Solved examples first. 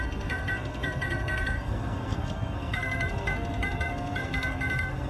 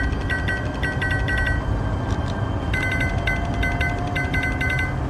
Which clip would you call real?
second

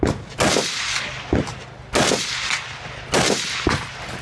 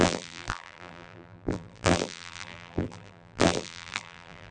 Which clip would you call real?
first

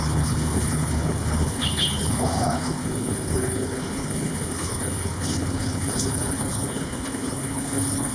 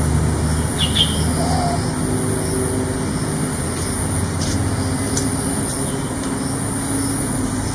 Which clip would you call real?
second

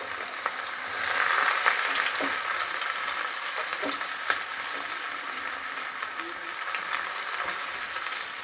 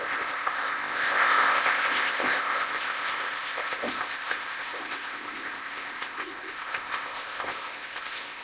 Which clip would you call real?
first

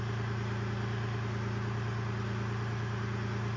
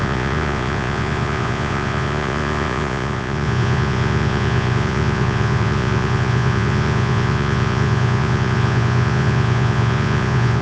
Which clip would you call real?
first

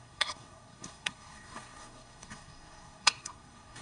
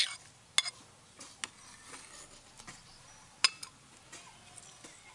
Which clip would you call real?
second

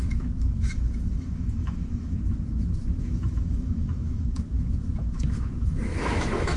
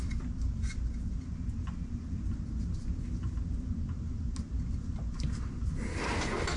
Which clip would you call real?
second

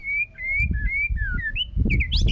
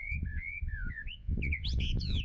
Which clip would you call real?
first